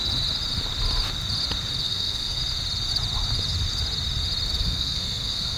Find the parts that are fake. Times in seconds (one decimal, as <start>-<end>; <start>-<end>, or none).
1.8-2.4; 4.6-5.6